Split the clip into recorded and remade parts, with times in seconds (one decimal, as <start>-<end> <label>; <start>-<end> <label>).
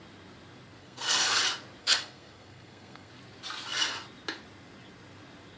0.0-0.8 recorded; 0.8-1.4 remade; 1.4-1.8 recorded; 1.8-3.1 remade; 3.1-5.6 recorded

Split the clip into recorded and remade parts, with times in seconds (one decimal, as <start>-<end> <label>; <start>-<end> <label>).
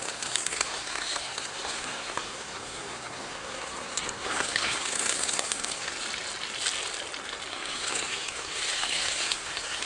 0.0-5.9 remade; 5.9-7.5 recorded; 7.5-9.9 remade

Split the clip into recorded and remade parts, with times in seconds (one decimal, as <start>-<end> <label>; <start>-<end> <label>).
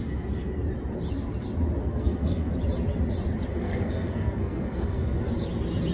0.0-1.8 recorded; 1.8-2.5 remade; 2.5-3.5 recorded; 3.5-5.2 remade; 5.2-5.9 recorded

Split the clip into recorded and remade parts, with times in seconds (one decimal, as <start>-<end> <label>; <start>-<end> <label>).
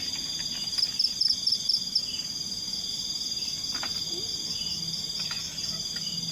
0.0-6.3 recorded